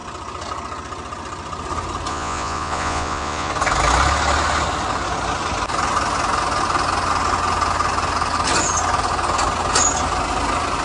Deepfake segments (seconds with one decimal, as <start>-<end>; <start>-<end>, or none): 2.1-3.5